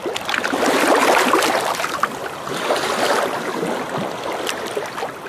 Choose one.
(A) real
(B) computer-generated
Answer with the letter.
A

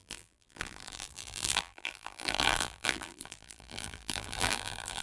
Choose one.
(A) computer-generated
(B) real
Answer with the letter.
A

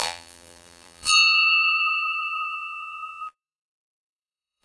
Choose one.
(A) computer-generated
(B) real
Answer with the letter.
A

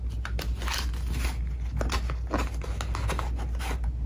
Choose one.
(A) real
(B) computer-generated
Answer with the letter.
A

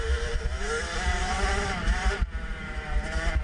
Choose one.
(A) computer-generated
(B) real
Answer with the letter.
A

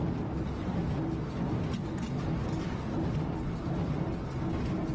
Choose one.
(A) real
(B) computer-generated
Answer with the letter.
A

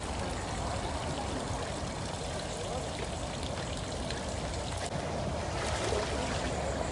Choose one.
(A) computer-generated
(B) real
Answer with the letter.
B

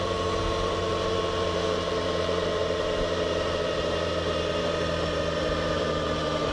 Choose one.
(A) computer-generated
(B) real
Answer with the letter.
A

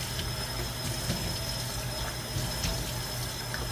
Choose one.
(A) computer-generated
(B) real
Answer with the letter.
B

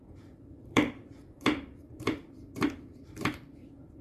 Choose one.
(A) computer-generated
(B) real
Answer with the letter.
A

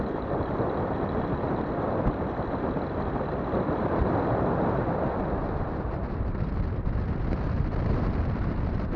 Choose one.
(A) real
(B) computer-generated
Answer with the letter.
B